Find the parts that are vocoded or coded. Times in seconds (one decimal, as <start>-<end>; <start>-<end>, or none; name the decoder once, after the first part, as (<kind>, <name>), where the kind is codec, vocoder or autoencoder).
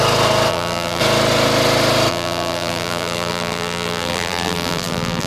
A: 0.5-1.0 (vocoder, BigVGAN v2); 2.1-5.3